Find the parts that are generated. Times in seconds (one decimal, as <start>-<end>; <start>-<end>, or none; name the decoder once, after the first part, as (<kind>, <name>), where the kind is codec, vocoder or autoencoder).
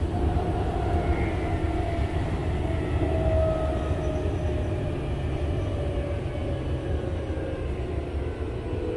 none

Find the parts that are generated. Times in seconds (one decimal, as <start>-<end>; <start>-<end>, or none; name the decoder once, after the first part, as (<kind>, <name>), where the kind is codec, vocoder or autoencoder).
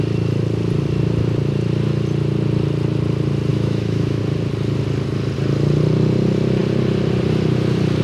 3.5-4.2 (autoencoder, DAC-VAE)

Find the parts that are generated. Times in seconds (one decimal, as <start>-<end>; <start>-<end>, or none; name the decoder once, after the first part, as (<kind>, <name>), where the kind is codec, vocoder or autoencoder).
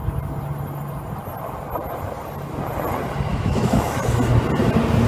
3.3-4.0 (autoencoder, DAC-VAE)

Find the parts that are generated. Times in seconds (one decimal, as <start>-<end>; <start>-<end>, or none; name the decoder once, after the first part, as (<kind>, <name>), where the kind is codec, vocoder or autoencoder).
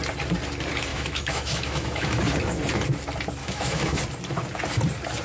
0.9-2.2 (autoencoder, DAC-VAE); 3.4-4.0